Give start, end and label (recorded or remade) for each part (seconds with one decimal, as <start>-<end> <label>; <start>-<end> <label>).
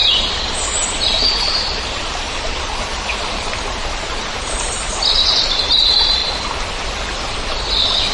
0.0-6.2 remade; 6.2-8.1 recorded